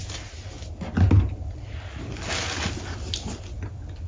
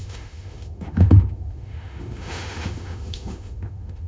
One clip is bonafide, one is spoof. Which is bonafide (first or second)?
first